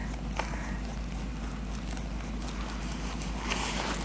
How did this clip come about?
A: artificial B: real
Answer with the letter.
B